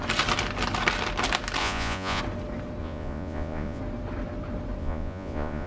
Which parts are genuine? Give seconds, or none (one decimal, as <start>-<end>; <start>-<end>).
0.0-1.6; 2.2-2.8; 3.8-4.8